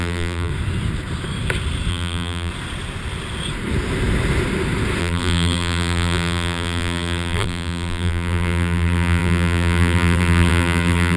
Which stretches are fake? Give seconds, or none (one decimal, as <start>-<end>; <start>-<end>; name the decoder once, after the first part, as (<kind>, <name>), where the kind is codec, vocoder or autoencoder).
0.0-0.5 (vocoder, BigVGAN v2); 1.9-2.5; 5.0-11.2